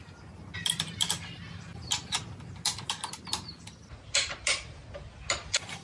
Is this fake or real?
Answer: real